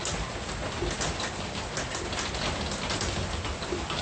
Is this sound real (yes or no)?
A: yes